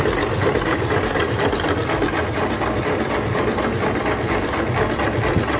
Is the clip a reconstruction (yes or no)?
no